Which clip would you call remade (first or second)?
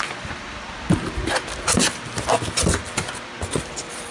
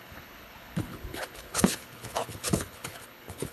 second